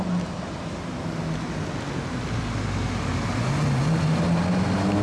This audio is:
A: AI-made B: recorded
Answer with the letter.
B